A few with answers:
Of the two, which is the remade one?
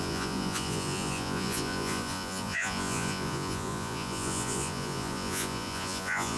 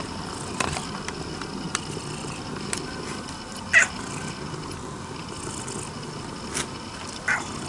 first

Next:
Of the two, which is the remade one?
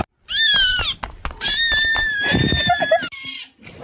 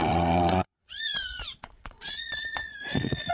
second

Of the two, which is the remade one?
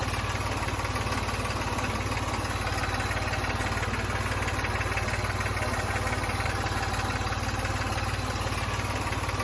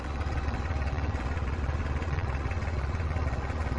second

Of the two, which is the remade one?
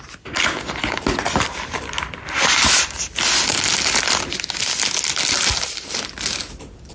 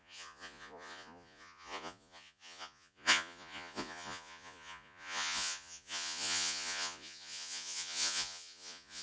second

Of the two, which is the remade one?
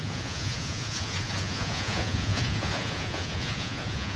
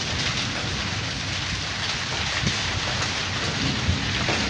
first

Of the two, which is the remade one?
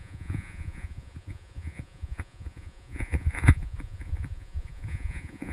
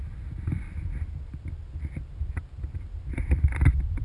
first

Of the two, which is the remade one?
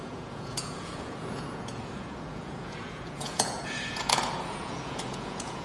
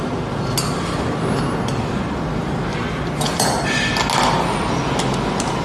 first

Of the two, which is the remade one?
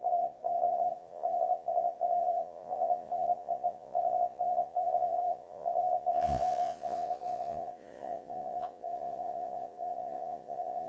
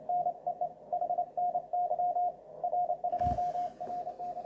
first